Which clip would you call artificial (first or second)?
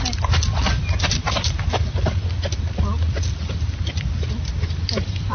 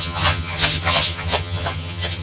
second